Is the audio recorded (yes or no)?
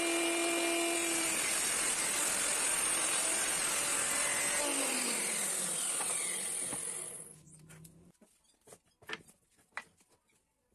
yes